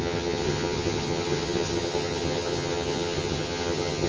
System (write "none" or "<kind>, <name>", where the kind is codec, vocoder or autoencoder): vocoder, HiFi-GAN